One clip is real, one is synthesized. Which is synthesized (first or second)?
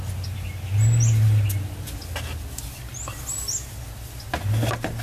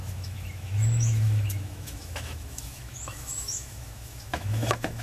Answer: second